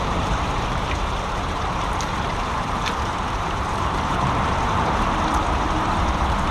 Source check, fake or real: fake